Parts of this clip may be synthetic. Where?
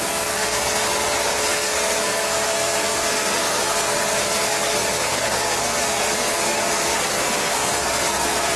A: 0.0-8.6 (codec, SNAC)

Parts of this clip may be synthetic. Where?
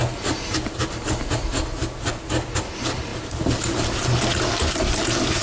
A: 3.1-3.8 (vocoder, BigVGAN v2)